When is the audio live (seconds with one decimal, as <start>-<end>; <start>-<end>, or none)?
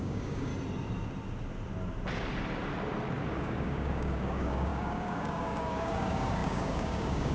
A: 0.5-3.3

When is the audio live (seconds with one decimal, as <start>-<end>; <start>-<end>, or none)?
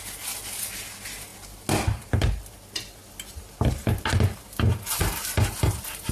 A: 0.0-6.1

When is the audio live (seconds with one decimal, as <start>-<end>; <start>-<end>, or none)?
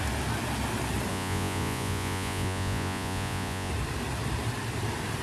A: 0.0-1.1; 3.7-5.2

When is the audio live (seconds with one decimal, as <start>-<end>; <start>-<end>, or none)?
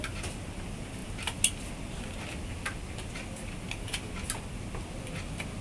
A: 0.0-5.6